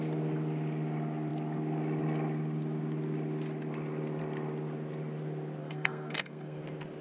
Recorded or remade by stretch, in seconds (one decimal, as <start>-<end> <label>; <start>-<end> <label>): 0.0-5.6 recorded; 5.6-6.6 remade; 6.6-7.0 recorded